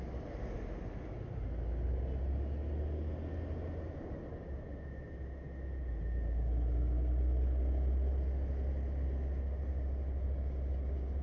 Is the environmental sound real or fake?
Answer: real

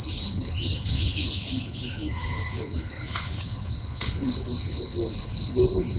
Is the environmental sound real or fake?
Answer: fake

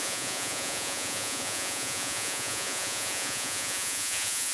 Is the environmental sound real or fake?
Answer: fake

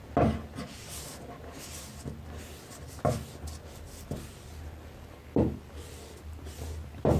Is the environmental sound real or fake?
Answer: real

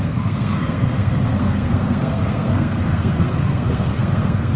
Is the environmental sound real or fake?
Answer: fake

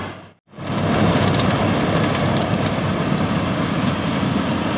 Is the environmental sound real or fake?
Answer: real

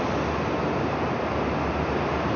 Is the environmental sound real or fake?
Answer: real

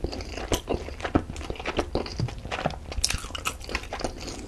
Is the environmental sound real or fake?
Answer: real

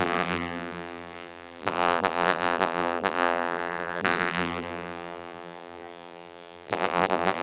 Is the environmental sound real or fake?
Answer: fake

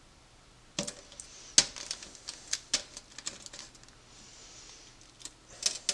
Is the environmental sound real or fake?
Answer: real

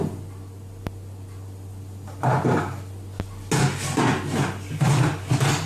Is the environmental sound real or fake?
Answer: real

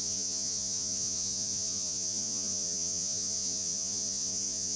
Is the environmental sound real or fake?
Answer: fake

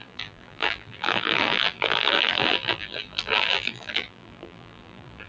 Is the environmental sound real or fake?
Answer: fake